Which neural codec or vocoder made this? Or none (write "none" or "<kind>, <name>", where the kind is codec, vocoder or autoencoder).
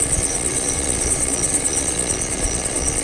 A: vocoder, Vocos